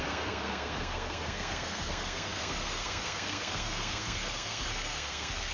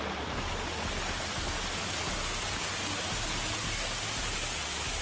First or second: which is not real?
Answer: first